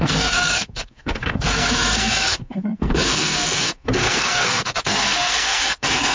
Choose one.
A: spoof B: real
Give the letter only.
A